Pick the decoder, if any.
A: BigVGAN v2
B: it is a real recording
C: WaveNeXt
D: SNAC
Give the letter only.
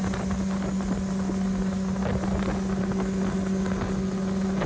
B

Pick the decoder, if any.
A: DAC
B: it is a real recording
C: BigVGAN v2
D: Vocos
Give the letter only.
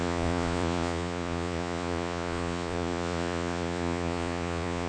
D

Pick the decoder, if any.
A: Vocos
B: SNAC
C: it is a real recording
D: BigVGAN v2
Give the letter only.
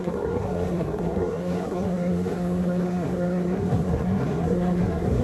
B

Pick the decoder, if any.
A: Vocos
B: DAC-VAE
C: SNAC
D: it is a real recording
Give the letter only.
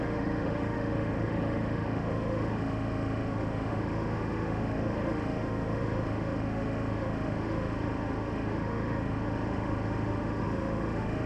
B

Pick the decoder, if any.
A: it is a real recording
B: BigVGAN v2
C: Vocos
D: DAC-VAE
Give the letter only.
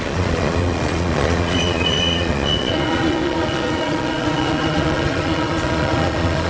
C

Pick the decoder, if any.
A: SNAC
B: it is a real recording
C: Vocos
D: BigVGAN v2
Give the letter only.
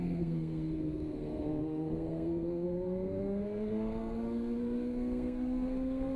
A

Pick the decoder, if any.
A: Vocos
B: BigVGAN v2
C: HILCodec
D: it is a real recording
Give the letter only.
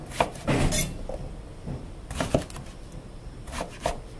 D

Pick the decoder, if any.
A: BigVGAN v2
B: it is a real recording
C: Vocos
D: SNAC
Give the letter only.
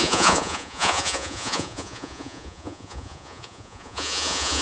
C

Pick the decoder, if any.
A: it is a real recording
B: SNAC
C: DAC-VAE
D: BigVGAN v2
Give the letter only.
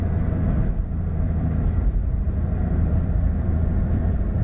D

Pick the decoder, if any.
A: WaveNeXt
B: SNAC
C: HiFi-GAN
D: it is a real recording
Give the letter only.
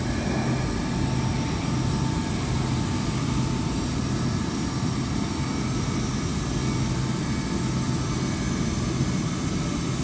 D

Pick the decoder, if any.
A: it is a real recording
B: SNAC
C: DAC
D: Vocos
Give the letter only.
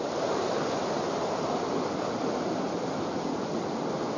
A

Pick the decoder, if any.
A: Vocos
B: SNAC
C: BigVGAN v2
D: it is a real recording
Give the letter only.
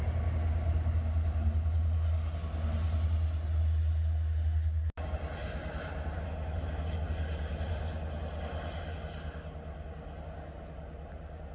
D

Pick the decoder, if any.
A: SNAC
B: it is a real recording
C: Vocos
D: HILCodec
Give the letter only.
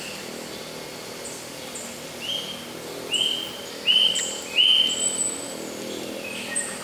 B